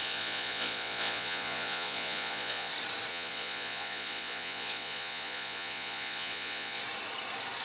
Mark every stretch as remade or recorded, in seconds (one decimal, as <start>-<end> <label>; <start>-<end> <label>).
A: 0.0-2.7 remade; 2.7-3.1 recorded; 3.1-6.8 remade; 6.8-7.6 recorded